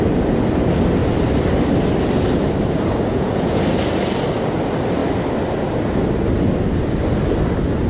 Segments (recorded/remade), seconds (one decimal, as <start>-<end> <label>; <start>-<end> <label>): 0.0-3.1 recorded; 3.1-3.6 remade; 3.6-7.9 recorded